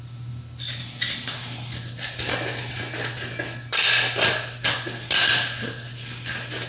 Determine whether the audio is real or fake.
real